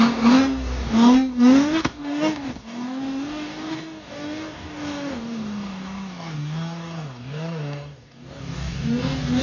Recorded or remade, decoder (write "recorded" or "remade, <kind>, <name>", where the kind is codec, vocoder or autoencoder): remade, codec, DAC